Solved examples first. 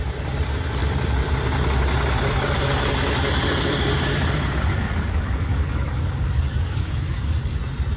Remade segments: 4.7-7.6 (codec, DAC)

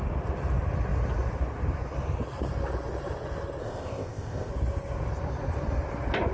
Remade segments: 3.6-4.5 (codec, ZipCodec)

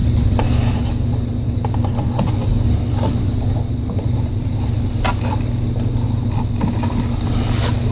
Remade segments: none

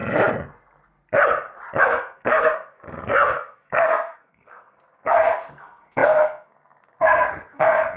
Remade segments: 1.8-8.0 (codec, SNAC)

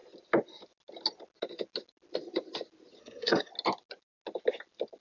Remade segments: 3.0-3.5 (codec, SNAC)

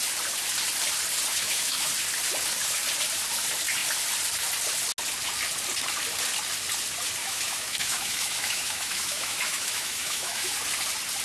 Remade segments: 1.3-1.9 (autoencoder, DAC-VAE); 7.2-10.5